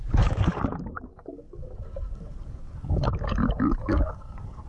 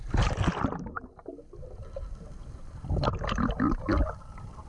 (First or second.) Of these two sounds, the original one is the second